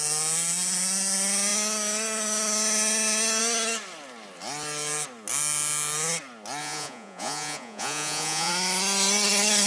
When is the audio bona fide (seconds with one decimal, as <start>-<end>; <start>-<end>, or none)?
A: 0.0-6.6; 8.5-9.7